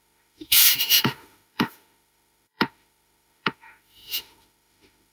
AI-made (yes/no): yes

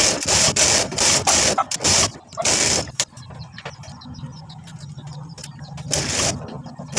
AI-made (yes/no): no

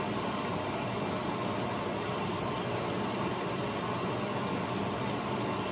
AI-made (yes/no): no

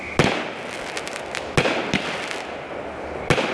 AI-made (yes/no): no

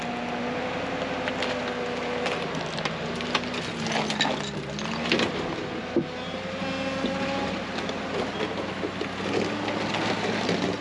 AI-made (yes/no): no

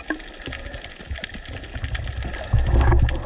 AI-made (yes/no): no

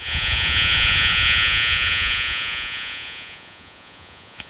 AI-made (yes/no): yes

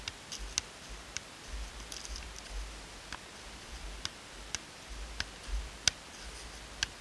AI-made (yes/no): no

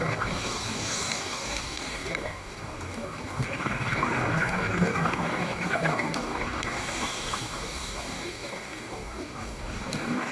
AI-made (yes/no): yes